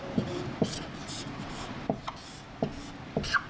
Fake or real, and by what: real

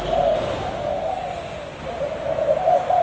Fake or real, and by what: real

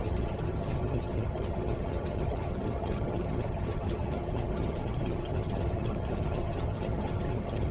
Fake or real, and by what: fake, vocoder, HiFi-GAN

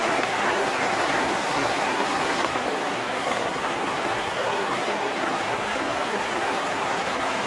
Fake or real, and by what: fake, codec, SNAC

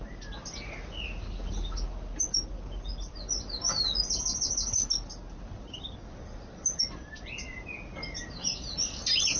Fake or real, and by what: real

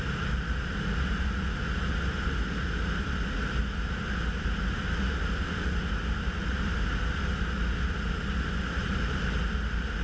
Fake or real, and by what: real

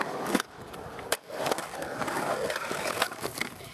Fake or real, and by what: fake, codec, DAC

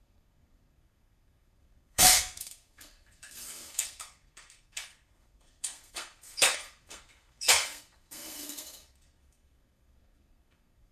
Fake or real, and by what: fake, codec, SNAC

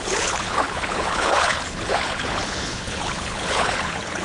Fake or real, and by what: fake, codec, HILCodec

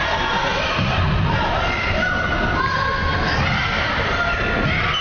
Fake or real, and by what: real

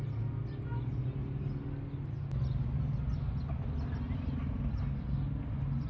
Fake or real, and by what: real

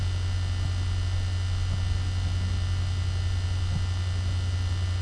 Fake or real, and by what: real